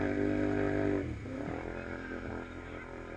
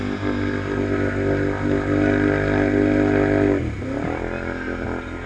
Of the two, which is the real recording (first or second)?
second